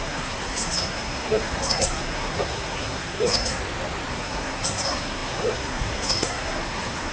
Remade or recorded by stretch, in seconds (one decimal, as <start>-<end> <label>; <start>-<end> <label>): 0.0-3.6 remade; 3.6-4.1 recorded; 4.1-7.1 remade